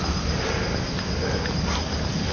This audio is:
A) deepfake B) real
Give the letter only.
B